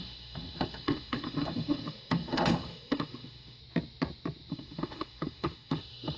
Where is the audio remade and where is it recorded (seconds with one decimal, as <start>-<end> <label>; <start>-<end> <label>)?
0.0-3.6 remade; 3.6-4.5 recorded; 4.5-6.2 remade